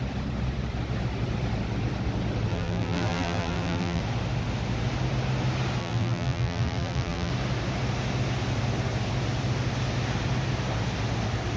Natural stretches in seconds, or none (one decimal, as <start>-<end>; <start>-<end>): 0.0-2.5; 4.0-5.8; 7.3-11.6